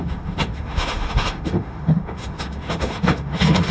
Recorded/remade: remade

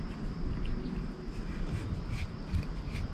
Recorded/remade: recorded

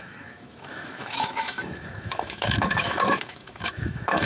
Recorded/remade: remade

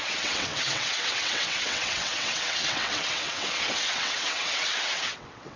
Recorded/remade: remade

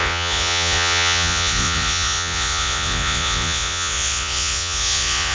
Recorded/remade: remade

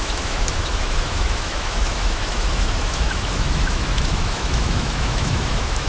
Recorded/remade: remade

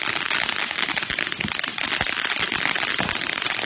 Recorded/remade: recorded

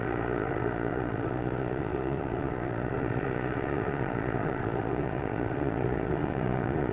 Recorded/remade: remade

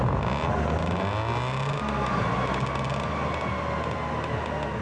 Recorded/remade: recorded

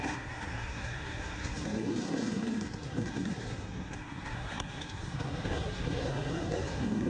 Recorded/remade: remade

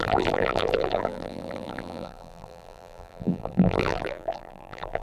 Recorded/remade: remade